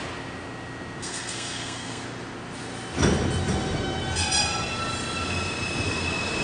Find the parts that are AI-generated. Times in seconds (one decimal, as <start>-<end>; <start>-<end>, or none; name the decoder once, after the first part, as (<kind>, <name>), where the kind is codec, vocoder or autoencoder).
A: 1.0-2.0 (codec, SNAC)